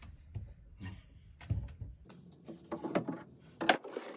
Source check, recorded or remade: recorded